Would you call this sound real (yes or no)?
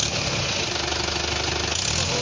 yes